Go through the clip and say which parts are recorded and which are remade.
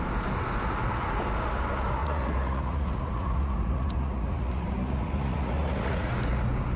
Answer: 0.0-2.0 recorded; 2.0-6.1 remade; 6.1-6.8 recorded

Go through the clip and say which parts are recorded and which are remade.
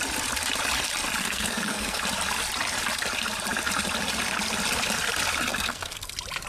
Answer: 0.0-1.2 recorded; 1.2-2.0 remade; 2.0-5.5 recorded; 5.5-6.1 remade; 6.1-6.5 recorded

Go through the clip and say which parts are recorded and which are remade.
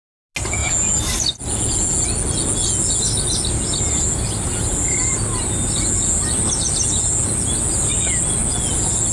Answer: 0.0-9.1 recorded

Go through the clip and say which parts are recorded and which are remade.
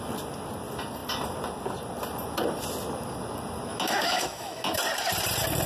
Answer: 0.0-3.7 recorded; 3.7-4.8 remade; 4.8-5.7 recorded